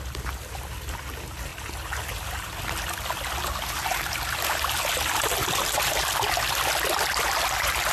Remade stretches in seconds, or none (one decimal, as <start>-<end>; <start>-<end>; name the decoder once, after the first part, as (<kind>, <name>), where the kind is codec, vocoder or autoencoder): none